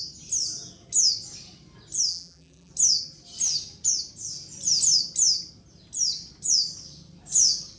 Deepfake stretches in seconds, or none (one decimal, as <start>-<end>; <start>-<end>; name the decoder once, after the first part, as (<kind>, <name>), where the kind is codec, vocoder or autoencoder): 2.1-2.7 (vocoder, BigVGAN v2)